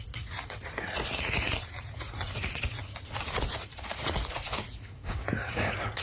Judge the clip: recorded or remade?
remade